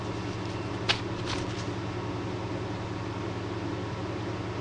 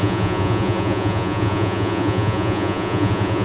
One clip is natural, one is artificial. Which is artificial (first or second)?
second